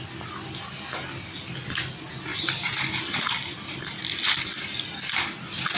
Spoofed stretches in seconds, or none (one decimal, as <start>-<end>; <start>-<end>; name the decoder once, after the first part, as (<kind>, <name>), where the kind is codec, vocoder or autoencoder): none